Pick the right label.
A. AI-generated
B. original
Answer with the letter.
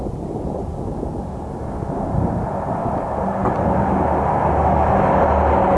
B